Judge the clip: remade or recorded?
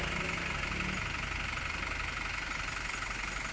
recorded